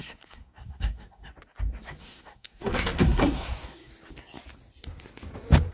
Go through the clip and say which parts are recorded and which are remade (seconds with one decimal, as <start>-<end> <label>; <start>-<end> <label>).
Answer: 0.0-1.3 remade; 1.3-2.0 recorded; 2.0-3.9 remade; 3.9-5.7 recorded